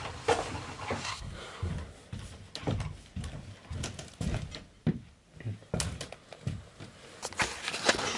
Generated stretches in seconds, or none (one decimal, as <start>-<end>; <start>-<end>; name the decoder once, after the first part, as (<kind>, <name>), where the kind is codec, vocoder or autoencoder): 1.0-1.7 (codec, SNAC)